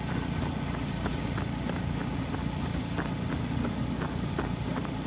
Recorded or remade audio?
recorded